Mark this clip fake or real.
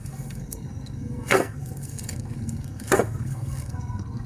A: fake